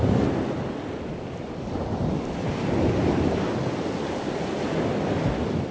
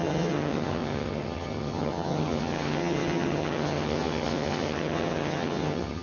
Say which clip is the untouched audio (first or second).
first